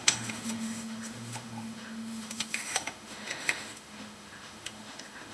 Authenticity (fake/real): fake